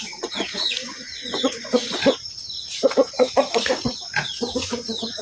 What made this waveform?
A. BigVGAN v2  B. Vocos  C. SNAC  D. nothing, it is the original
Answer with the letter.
B